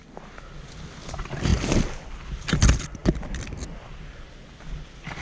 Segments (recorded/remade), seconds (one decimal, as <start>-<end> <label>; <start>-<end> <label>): 0.0-5.2 recorded